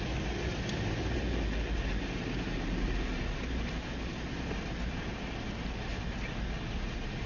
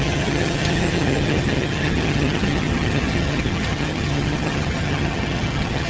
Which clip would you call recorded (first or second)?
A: first